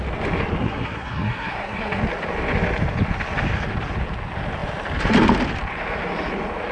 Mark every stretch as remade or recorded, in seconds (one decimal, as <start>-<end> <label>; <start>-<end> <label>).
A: 0.0-0.6 recorded; 0.6-2.0 remade; 2.0-6.7 recorded